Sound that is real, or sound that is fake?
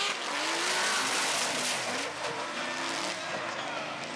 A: real